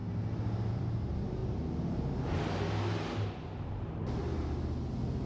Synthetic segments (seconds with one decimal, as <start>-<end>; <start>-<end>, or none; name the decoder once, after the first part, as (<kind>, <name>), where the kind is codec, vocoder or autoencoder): 0.7-1.4 (vocoder, BigVGAN v2); 2.4-4.2